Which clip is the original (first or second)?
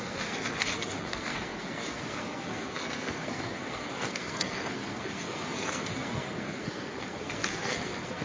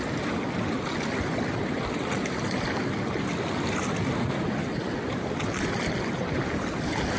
second